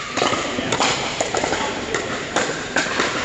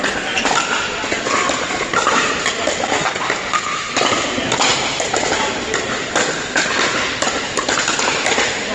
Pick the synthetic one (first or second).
first